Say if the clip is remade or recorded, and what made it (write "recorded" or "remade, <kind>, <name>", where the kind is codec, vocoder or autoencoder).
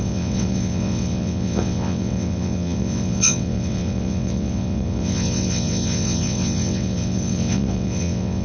remade, vocoder, WaveNeXt